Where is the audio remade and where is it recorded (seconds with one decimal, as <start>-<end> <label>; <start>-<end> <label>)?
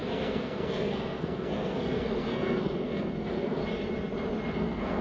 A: 0.0-3.6 remade; 3.6-4.5 recorded; 4.5-5.0 remade